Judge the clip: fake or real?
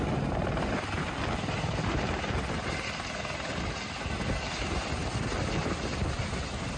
real